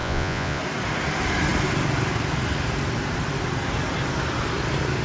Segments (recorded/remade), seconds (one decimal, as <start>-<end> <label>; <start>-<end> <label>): 0.0-0.6 remade; 0.6-5.0 recorded